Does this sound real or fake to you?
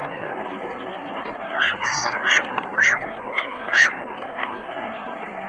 fake